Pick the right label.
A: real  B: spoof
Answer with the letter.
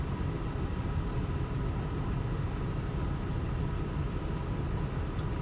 A